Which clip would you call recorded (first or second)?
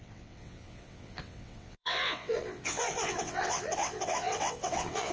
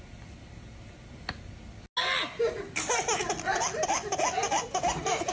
second